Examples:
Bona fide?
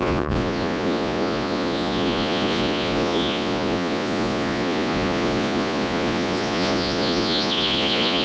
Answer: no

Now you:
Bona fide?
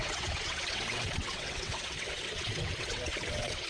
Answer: no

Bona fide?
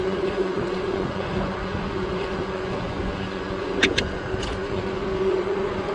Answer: no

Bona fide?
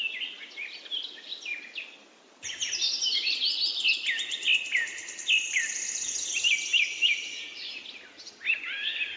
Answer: yes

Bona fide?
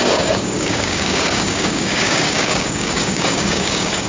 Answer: no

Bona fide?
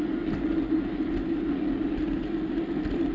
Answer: yes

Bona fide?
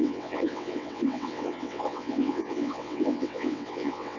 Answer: no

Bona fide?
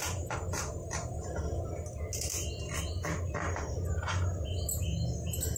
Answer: yes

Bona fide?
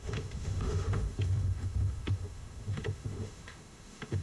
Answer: no